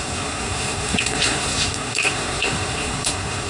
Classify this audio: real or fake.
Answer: fake